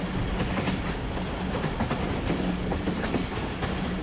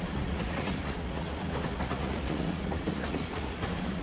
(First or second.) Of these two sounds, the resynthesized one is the second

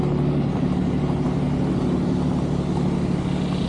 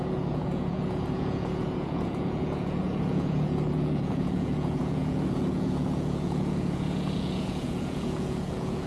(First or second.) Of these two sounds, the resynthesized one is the second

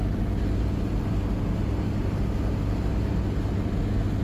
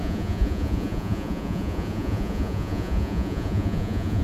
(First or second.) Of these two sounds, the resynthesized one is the second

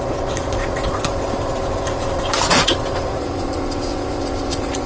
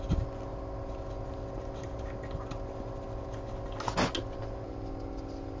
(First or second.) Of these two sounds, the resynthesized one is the first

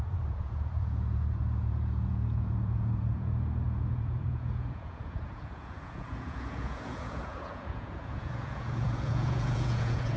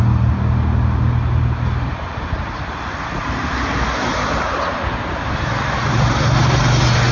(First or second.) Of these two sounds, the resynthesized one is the first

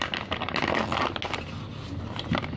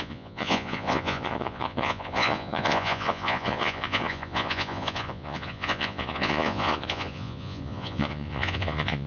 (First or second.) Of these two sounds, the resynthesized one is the second